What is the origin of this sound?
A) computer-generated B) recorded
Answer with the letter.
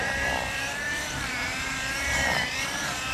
A